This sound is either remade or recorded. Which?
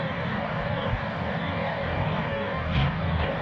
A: remade